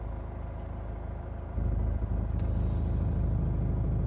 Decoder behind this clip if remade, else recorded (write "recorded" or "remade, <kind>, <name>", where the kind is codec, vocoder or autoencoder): recorded